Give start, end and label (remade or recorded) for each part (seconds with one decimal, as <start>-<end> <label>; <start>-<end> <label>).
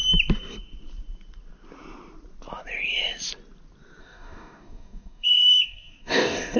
0.0-4.0 recorded; 4.0-6.6 remade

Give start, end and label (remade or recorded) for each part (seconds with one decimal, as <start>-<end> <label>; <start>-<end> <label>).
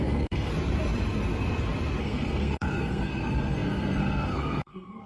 0.0-0.5 remade; 0.5-2.0 recorded; 2.0-5.1 remade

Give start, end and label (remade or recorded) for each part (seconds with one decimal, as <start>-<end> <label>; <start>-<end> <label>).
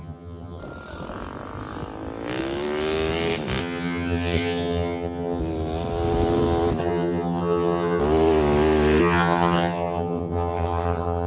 0.0-0.6 remade; 0.6-3.6 recorded; 3.6-5.4 remade; 5.4-6.8 recorded; 6.8-8.0 remade; 8.0-9.0 recorded; 9.0-11.3 remade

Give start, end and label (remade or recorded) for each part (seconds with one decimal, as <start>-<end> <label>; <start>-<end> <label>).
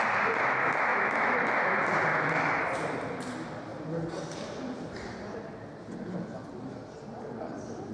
0.0-0.9 recorded; 0.9-1.4 remade; 1.4-2.1 recorded; 2.1-2.6 remade; 2.6-7.9 recorded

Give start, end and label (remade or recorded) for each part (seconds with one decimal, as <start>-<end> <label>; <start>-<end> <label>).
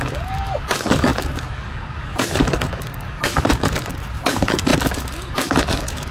0.0-6.1 remade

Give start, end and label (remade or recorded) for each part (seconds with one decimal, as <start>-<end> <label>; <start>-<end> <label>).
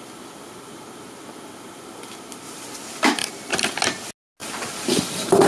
0.0-3.2 recorded; 3.2-3.7 remade; 3.7-5.5 recorded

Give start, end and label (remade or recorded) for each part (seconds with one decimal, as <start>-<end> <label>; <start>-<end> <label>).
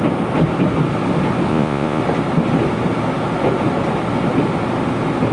0.0-1.5 recorded; 1.5-2.0 remade; 2.0-5.3 recorded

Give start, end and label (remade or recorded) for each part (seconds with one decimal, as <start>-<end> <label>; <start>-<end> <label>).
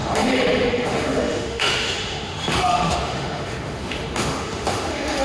0.0-5.2 remade